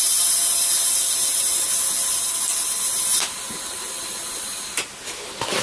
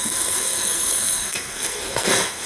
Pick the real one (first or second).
first